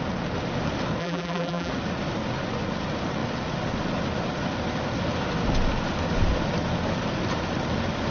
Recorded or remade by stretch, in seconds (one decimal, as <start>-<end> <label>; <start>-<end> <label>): 0.0-1.0 recorded; 1.0-1.7 remade; 1.7-8.1 recorded